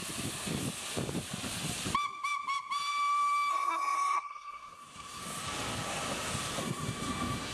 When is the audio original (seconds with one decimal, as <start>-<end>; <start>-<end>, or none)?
0.0-3.5; 5.2-6.6